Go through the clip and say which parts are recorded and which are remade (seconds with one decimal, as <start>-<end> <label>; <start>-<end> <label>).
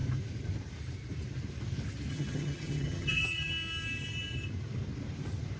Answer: 0.0-2.1 recorded; 2.1-3.5 remade; 3.5-5.6 recorded